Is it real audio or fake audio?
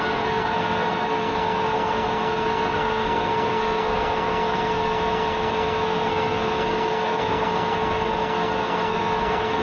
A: fake